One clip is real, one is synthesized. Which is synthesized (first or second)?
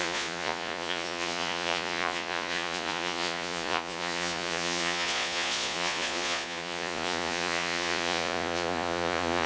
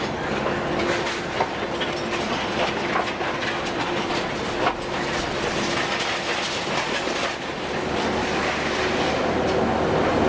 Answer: first